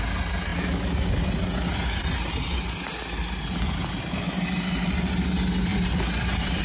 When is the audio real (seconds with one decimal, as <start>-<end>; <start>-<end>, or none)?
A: 0.0-5.7